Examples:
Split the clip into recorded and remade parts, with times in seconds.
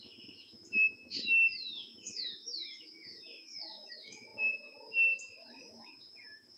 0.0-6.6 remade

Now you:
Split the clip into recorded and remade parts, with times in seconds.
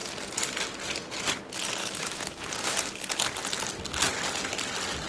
0.0-1.8 recorded; 1.8-2.5 remade; 2.5-5.1 recorded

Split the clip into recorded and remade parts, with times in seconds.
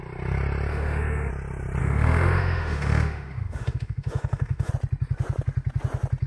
0.0-0.7 recorded; 0.7-1.3 remade; 1.3-1.8 recorded; 1.8-4.7 remade; 4.7-6.3 recorded